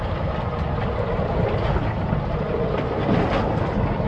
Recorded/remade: recorded